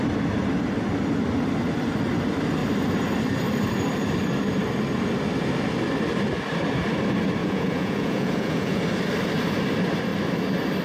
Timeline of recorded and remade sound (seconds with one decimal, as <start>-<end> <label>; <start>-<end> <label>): 0.0-7.4 recorded; 7.4-8.8 remade; 8.8-10.8 recorded